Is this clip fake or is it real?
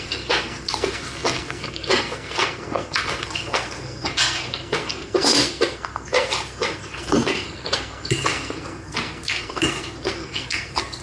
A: fake